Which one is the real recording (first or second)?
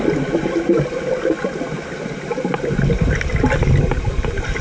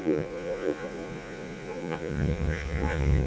first